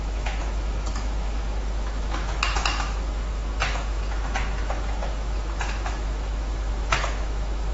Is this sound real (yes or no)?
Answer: no